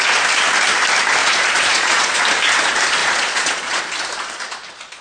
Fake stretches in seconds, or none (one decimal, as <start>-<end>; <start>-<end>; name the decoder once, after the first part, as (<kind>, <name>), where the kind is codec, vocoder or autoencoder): 1.2-2.2 (vocoder, Vocos); 3.0-3.8